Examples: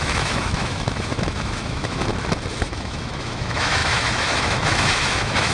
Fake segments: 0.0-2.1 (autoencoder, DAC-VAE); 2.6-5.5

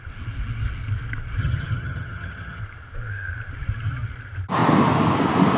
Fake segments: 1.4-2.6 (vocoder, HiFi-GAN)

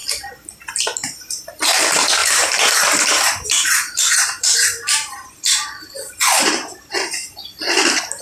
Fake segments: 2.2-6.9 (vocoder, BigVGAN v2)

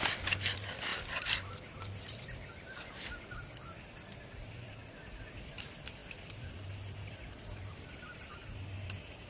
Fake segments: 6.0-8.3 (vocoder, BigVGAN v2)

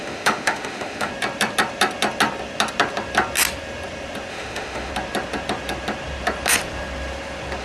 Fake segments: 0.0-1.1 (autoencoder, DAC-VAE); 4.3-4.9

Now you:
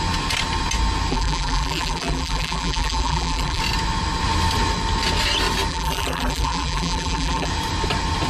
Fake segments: 1.1-3.6 (vocoder, BigVGAN v2); 5.7-7.5